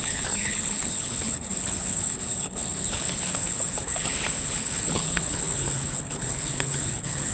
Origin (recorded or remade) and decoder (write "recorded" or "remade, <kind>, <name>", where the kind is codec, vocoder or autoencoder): remade, codec, HILCodec